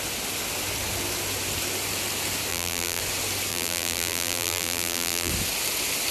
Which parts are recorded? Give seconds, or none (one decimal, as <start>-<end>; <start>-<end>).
0.0-2.5; 3.0-3.5; 5.3-6.1